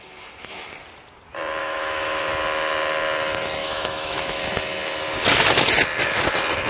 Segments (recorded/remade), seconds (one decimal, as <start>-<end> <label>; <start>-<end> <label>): 0.0-1.6 recorded; 1.6-2.2 remade; 2.2-3.6 recorded; 3.6-4.4 remade; 4.4-6.7 recorded